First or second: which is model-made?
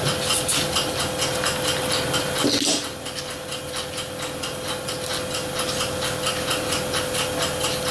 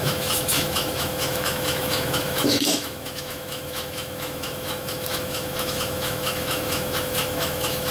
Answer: second